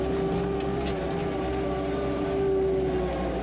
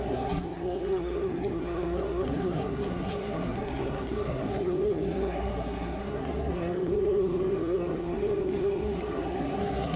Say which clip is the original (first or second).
first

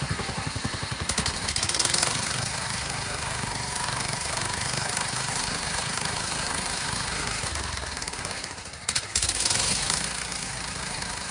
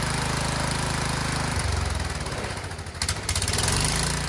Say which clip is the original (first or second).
second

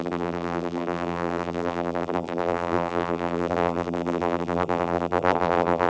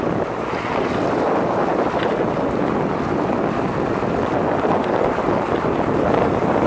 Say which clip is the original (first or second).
second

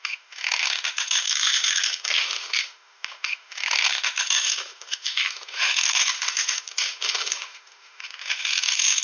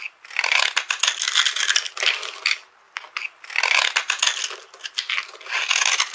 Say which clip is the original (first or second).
second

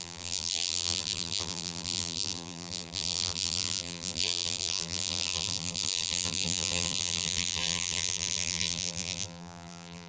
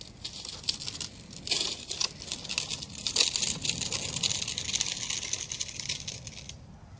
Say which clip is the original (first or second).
second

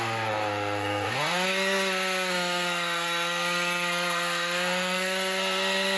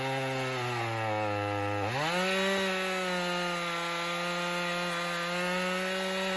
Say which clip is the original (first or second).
second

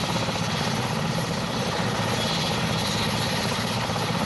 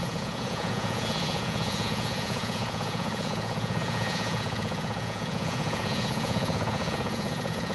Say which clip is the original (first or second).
first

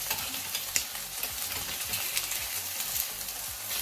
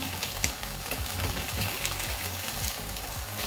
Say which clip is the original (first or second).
first